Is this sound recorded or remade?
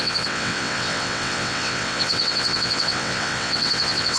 remade